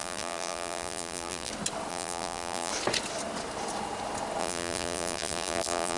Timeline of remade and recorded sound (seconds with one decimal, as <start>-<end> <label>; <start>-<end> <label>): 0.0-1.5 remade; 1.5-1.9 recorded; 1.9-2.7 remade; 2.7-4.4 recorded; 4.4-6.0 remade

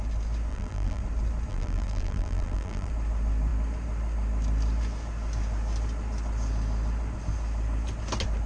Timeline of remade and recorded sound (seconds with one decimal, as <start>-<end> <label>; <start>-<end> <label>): 0.0-0.5 recorded; 0.5-1.0 remade; 1.0-1.5 recorded; 1.5-2.9 remade; 2.9-8.5 recorded

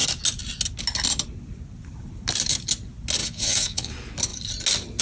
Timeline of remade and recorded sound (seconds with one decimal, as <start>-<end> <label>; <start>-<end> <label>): 0.0-3.2 recorded; 3.2-3.9 remade; 3.9-5.0 recorded

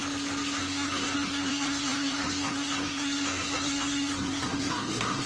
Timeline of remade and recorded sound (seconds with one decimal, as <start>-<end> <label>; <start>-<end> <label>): 0.0-0.6 recorded; 0.6-5.3 remade

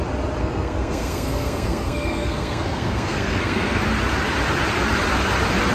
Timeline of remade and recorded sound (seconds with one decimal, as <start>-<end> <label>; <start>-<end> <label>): 0.0-0.4 recorded; 0.4-3.8 remade; 3.8-5.7 recorded

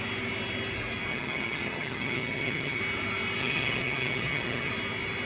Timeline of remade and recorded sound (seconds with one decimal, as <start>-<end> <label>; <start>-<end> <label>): 0.0-1.1 recorded; 1.1-2.8 remade; 2.8-3.4 recorded; 3.4-4.7 remade; 4.7-5.3 recorded

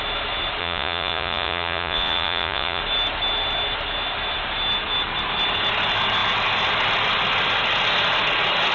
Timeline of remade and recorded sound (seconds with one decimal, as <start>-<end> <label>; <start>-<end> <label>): 0.0-0.6 recorded; 0.6-2.8 remade; 2.8-8.7 recorded

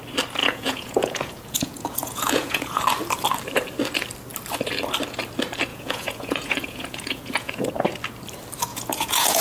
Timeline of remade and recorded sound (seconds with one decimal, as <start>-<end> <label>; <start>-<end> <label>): 0.0-0.4 recorded; 0.4-2.8 remade; 2.8-5.7 recorded; 5.7-7.7 remade; 7.7-8.7 recorded; 8.7-9.4 remade